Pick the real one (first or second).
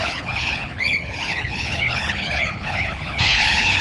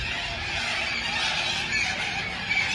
second